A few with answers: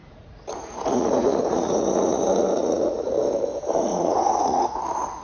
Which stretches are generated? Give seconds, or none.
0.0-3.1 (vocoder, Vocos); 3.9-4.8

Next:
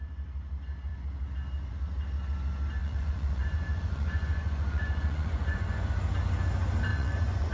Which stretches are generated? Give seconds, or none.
2.8-5.9 (vocoder, Vocos); 6.9-7.5

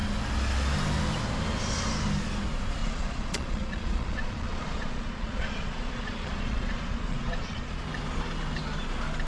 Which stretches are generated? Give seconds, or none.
2.8-7.7 (vocoder, Vocos)

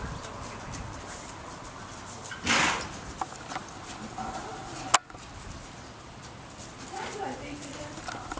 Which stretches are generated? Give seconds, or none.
none